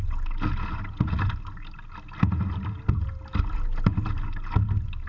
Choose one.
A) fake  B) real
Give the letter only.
B